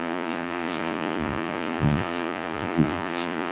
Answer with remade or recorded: remade